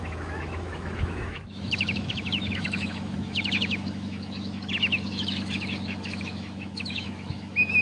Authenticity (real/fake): fake